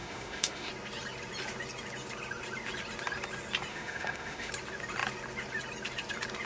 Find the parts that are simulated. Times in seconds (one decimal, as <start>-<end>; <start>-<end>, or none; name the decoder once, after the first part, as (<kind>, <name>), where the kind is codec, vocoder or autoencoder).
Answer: 0.0-0.7 (autoencoder, DAC-VAE); 3.7-4.5

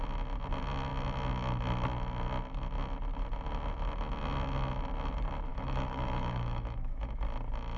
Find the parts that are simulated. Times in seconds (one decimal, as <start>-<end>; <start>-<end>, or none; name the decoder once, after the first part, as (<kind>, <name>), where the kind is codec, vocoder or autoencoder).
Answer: 5.5-7.2 (autoencoder, DAC-VAE)

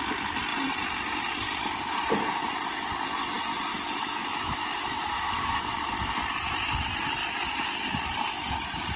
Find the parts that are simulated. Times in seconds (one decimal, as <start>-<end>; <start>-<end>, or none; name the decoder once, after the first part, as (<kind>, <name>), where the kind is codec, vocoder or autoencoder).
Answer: 3.7-6.2 (autoencoder, DAC-VAE)

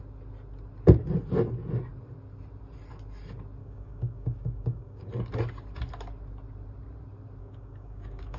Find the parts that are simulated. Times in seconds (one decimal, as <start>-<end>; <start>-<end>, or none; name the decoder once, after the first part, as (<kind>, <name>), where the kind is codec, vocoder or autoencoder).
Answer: 3.6-5.1 (codec, DAC); 7.4-8.4

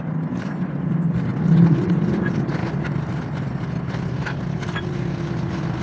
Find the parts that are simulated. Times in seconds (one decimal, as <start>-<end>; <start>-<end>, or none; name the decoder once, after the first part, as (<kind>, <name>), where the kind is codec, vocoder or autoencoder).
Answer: none

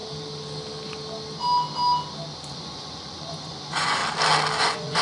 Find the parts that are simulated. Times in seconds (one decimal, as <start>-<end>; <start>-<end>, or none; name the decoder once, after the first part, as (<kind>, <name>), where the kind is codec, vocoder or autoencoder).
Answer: 2.5-4.0 (vocoder, Vocos); 4.6-5.0

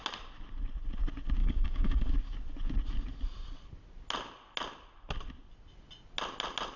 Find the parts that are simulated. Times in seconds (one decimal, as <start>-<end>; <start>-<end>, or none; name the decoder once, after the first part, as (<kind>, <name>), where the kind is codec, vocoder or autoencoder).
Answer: 1.4-2.1 (codec, DAC)

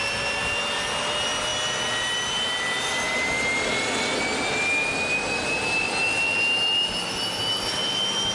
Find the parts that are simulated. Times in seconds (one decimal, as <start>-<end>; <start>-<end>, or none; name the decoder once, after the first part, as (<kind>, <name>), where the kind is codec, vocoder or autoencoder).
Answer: none